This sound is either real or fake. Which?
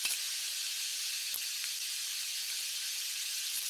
fake